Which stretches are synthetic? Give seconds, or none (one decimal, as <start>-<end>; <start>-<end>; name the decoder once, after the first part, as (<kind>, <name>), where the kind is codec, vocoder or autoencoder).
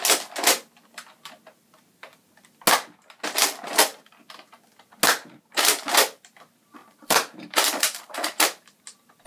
6.8-8.8 (vocoder, BigVGAN v2)